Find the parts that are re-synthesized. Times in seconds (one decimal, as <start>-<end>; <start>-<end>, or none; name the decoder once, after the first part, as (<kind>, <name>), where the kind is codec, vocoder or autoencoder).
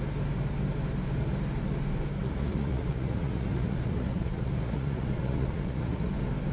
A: 2.2-6.1 (vocoder, Vocos)